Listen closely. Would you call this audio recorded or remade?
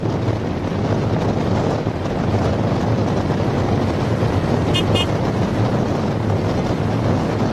recorded